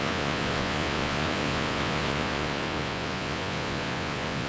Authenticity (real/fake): fake